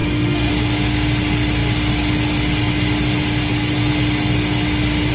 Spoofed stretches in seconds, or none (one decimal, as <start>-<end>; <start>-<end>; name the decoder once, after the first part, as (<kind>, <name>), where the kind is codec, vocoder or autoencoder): 0.0-0.5 (autoencoder, DAC-VAE)